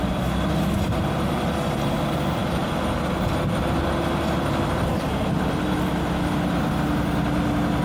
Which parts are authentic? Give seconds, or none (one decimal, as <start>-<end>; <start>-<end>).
0.0-7.8